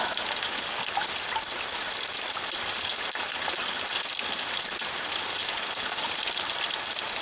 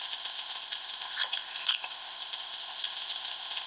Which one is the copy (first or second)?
second